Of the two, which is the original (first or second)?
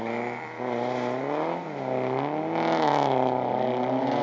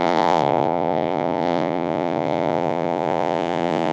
first